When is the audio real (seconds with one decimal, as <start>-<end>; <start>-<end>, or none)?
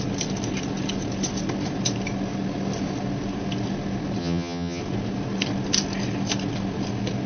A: 0.0-4.2; 4.8-7.3